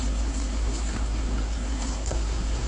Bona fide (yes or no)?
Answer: no